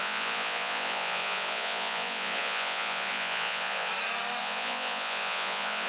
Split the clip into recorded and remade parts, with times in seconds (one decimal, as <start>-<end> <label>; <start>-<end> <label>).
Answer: 0.0-3.9 remade; 3.9-4.4 recorded; 4.4-5.9 remade